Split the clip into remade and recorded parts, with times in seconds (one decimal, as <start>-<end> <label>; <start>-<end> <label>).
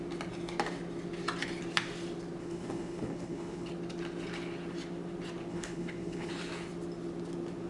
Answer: 0.0-2.4 recorded; 2.4-3.7 remade; 3.7-5.5 recorded; 5.5-6.3 remade; 6.3-7.7 recorded